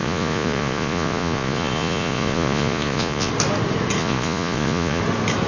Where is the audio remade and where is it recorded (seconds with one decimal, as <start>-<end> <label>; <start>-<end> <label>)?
0.0-3.3 remade; 3.3-4.0 recorded; 4.0-5.0 remade; 5.0-5.5 recorded